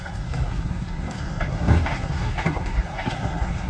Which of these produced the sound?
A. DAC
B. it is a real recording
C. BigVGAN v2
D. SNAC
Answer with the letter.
D